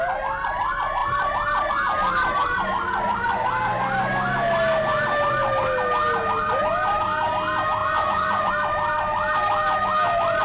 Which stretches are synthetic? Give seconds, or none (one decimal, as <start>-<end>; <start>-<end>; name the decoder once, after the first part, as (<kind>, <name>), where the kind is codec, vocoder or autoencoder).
7.8-8.5 (vocoder, Vocos)